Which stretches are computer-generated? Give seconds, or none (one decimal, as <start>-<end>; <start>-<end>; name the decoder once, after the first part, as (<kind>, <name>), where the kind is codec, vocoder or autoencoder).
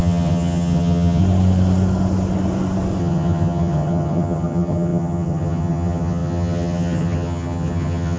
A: 0.0-1.2 (vocoder, HiFi-GAN); 3.0-8.2